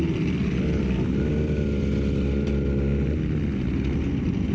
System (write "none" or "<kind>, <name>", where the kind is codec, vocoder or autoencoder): none